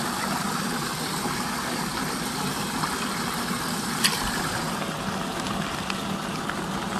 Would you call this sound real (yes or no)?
no